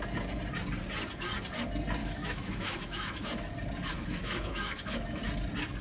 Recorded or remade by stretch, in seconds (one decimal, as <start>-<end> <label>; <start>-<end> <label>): 0.0-2.0 recorded; 2.0-3.5 remade; 3.5-3.9 recorded; 3.9-5.3 remade; 5.3-5.8 recorded